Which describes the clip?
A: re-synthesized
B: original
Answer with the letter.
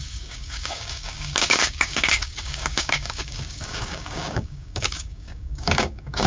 A